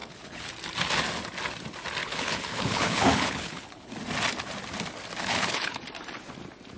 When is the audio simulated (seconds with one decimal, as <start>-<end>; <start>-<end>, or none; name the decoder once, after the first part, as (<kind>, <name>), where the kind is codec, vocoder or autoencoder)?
0.0-0.5 (codec, HILCodec); 2.0-3.9; 5.2-5.8

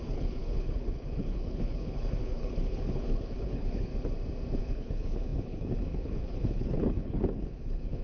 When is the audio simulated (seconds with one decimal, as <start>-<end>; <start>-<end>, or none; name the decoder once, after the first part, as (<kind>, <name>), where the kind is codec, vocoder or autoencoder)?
0.0-3.9 (codec, HILCodec); 4.6-8.0

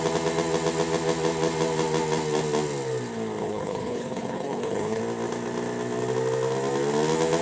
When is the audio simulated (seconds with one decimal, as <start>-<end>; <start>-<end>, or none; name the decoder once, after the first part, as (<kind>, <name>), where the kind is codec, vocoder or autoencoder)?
3.4-5.0 (codec, HILCodec)

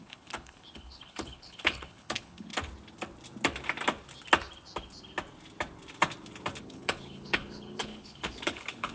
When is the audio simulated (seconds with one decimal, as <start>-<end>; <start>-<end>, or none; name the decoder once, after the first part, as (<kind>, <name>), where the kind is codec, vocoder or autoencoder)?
0.0-2.5 (codec, HILCodec); 6.6-8.9

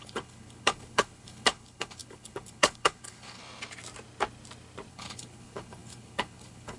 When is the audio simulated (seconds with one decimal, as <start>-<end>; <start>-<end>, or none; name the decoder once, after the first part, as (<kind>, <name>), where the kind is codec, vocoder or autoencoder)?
0.0-3.4 (codec, HILCodec); 4.9-6.8

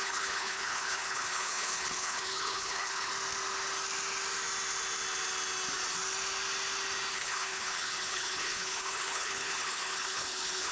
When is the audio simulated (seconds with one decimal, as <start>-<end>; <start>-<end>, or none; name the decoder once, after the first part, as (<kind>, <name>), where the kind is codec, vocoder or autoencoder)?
0.0-3.1 (codec, HILCodec); 7.1-10.7

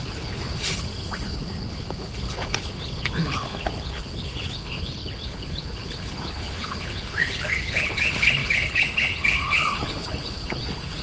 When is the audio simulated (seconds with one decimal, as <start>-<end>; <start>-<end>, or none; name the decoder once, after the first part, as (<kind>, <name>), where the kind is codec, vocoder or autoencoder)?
0.0-11.0 (codec, HILCodec)